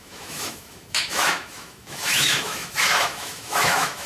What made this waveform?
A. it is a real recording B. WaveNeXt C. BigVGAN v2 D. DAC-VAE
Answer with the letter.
D